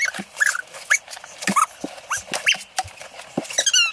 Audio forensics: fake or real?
real